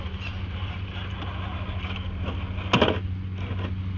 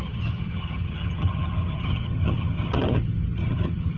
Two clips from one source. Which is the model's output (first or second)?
second